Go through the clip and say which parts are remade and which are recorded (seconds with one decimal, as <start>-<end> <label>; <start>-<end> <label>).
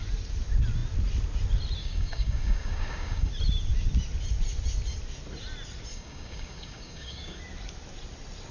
0.0-1.8 recorded; 1.8-3.3 remade; 3.3-5.9 recorded; 5.9-7.4 remade; 7.4-8.5 recorded